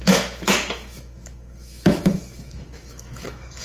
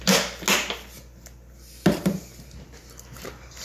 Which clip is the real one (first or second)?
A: second